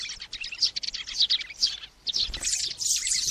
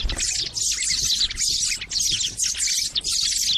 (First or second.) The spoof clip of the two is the first